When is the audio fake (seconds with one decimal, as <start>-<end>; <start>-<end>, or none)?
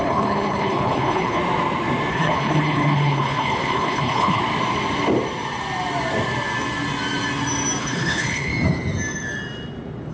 0.0-1.4; 2.1-4.4; 7.8-8.5